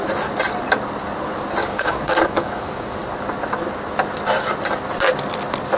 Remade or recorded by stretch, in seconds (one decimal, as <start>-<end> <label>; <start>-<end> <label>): 0.0-1.6 recorded; 1.6-3.1 remade; 3.1-5.8 recorded